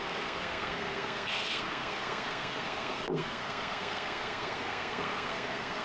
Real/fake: fake